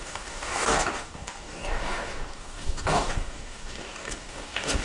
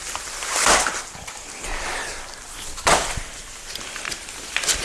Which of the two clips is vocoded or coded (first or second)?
first